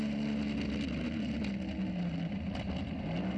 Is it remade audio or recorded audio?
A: recorded